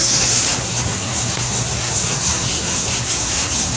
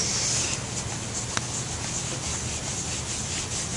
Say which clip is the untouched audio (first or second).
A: second